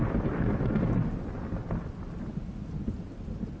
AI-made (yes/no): no